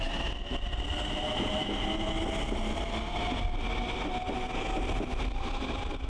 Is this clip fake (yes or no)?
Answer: no